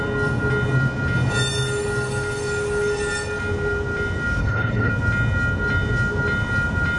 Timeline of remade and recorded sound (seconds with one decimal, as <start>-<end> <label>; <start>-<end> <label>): 0.0-4.4 recorded; 4.4-4.9 remade; 4.9-7.0 recorded